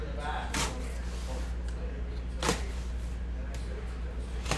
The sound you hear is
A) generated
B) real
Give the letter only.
B